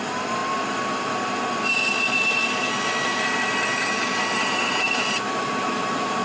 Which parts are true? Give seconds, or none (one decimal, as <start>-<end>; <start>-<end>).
0.0-4.3